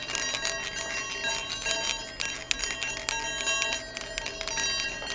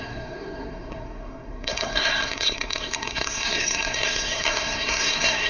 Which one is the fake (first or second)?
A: second